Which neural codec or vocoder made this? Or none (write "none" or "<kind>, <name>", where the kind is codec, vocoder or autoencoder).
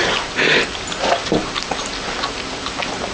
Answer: none